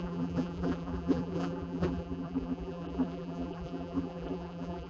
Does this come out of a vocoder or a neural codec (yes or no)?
yes